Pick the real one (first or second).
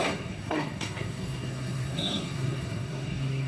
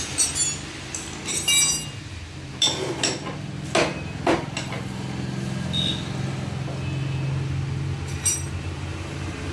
second